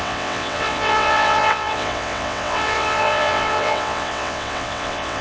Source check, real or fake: fake